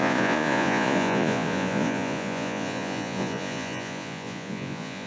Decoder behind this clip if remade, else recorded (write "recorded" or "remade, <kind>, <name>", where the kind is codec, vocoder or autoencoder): remade, vocoder, Vocos